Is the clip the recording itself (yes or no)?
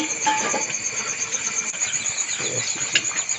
yes